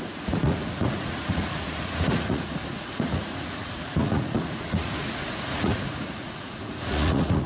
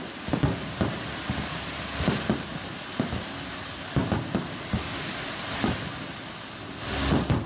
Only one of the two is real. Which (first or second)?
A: second